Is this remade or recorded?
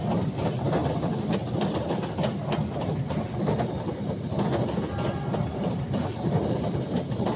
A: recorded